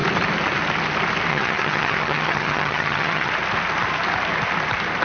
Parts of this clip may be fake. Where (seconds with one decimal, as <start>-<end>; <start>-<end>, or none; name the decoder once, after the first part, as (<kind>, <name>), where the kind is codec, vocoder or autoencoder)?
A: 1.3-3.3 (vocoder, HiFi-GAN)